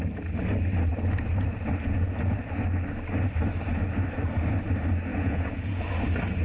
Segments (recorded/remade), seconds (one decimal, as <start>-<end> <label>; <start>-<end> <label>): 0.0-5.1 recorded; 5.1-5.8 remade; 5.8-6.4 recorded